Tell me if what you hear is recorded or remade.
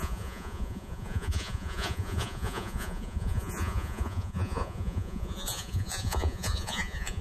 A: remade